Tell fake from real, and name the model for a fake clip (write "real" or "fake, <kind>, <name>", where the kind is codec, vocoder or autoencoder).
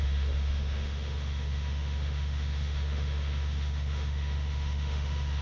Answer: fake, autoencoder, DAC-VAE